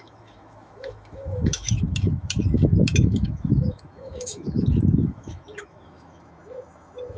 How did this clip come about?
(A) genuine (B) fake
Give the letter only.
B